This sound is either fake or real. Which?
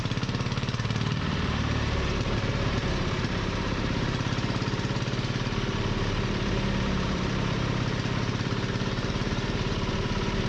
fake